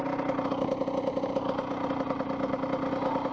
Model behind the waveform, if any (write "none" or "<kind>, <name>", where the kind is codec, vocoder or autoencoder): none